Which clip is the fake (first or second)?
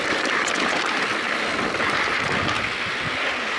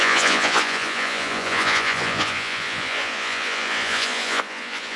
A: second